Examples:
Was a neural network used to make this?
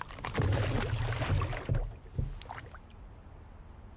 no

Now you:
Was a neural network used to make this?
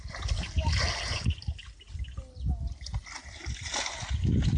no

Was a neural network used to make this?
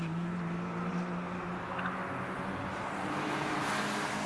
no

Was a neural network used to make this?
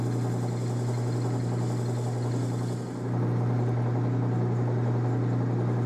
no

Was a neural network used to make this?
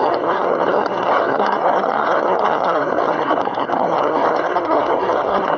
yes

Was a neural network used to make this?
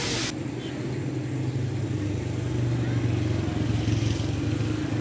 no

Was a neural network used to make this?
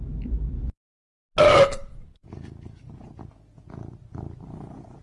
no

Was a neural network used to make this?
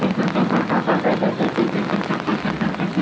no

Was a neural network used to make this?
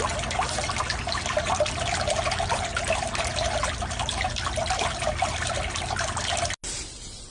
no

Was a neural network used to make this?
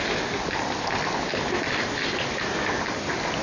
no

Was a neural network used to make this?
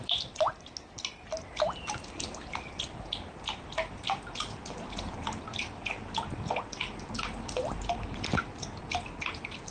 no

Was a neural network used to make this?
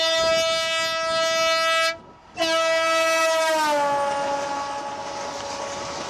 no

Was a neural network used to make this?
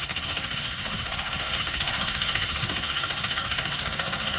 yes